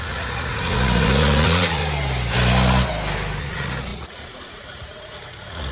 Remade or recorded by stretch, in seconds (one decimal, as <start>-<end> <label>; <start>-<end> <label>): 0.0-1.8 remade; 1.8-3.4 recorded; 3.4-5.7 remade